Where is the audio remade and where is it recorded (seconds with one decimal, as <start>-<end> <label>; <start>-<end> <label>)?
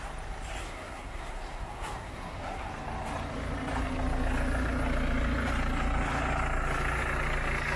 0.0-0.6 recorded; 0.6-2.7 remade; 2.7-7.8 recorded